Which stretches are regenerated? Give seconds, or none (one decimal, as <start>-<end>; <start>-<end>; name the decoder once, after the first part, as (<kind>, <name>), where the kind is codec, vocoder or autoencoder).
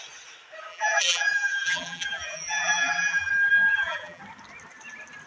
0.7-3.3 (vocoder, BigVGAN v2); 3.7-4.2